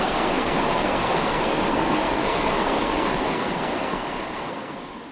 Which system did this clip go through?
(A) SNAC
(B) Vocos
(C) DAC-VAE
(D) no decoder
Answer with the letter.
A